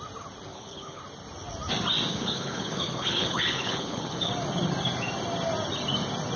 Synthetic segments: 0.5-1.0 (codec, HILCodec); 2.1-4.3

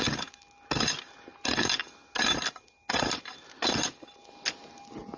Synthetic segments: none

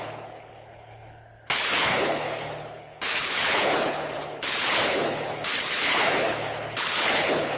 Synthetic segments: 0.0-7.6 (codec, HILCodec)

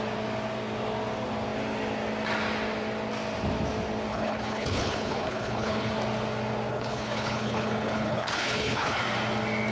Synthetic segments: 4.1-5.9 (codec, HILCodec); 6.7-9.0

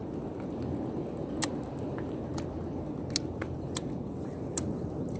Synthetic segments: none

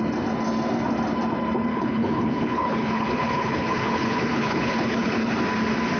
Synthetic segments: 1.7-5.3 (codec, HILCodec)

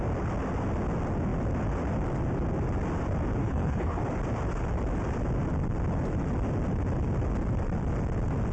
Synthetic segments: 3.4-4.0 (codec, HILCodec)